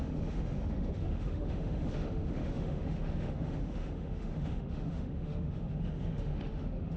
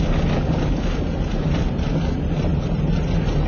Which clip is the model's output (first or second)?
first